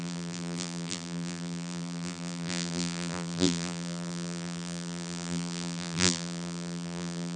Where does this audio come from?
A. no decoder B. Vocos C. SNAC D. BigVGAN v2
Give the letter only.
D